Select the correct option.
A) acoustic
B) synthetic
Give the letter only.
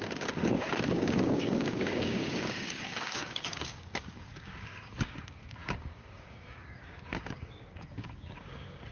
B